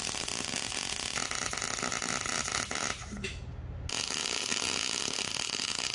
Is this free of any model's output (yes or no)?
yes